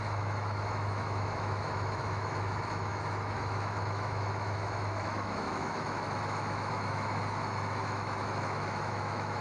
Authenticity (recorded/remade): remade